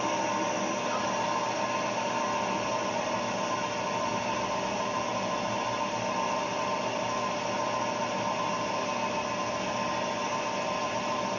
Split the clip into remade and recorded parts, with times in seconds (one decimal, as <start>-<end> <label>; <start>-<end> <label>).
0.0-11.4 recorded